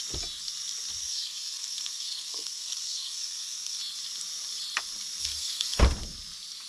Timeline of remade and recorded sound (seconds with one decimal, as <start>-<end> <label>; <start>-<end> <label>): 0.0-1.0 recorded; 1.0-3.8 remade; 3.8-5.2 recorded; 5.2-5.8 remade; 5.8-6.7 recorded